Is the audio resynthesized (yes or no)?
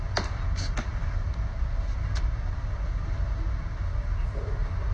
no